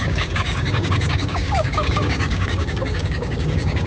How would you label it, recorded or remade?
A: remade